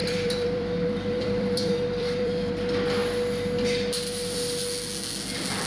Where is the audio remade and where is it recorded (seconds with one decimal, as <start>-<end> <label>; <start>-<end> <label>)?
0.0-2.5 remade; 2.5-5.7 recorded